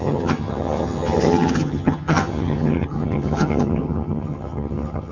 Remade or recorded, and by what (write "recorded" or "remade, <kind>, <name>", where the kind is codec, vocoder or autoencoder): remade, vocoder, HiFi-GAN